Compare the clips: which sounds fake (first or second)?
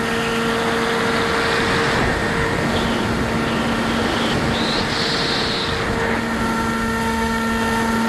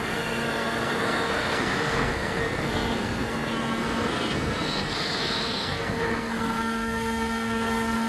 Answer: second